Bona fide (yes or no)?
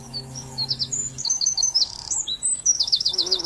no